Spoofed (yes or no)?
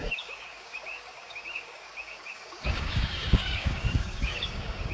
yes